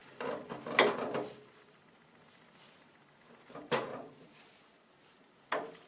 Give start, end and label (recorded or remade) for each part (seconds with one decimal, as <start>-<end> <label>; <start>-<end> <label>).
0.0-3.9 recorded; 3.9-4.9 remade; 4.9-5.9 recorded